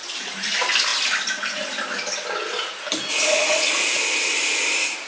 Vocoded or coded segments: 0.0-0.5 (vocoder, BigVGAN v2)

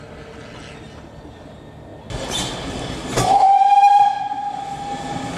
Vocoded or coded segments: none

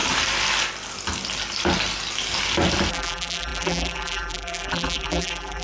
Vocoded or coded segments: 2.9-5.6 (vocoder, BigVGAN v2)